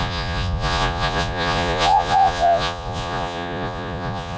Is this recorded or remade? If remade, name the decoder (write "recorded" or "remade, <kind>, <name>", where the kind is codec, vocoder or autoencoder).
remade, vocoder, Vocos